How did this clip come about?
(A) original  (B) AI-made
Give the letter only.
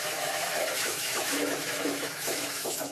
B